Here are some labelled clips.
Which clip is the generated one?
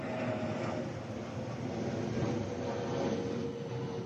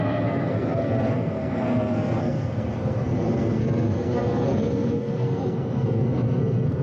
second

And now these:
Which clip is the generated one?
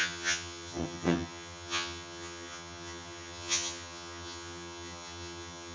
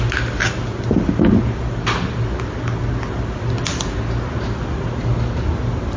first